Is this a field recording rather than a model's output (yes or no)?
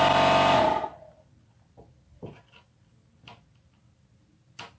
yes